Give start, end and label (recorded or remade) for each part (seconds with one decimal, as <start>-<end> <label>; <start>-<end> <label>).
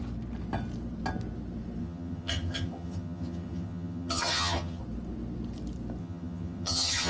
0.0-1.8 recorded; 1.8-4.8 remade; 4.8-6.0 recorded; 6.0-7.1 remade